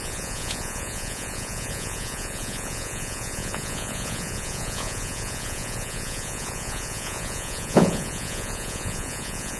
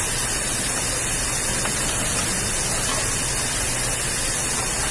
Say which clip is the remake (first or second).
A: first